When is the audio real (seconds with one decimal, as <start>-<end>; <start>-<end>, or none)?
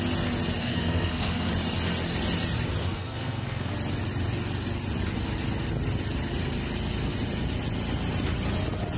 0.0-0.6; 1.5-2.8; 3.7-9.0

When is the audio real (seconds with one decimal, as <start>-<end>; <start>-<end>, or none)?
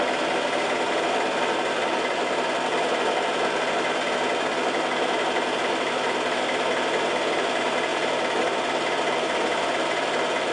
0.0-10.5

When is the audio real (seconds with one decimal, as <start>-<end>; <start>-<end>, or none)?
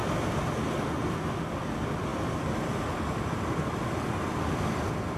0.0-5.2